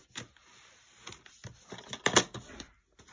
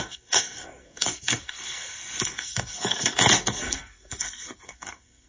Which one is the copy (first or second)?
second